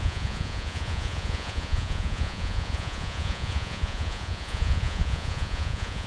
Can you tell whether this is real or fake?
fake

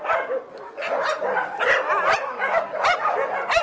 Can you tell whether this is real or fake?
real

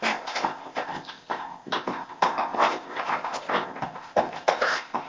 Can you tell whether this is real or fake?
fake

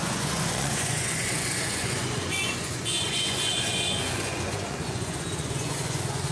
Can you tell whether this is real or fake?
fake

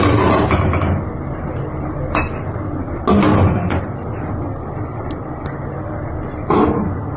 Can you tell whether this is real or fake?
real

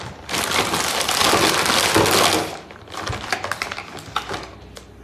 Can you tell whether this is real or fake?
real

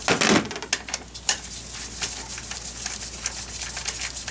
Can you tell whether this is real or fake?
real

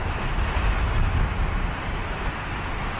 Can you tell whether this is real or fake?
real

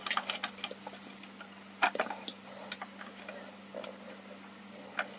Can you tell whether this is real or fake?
real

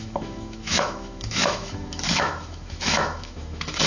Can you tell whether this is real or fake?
fake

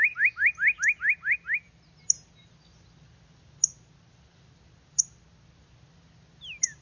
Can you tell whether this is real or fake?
real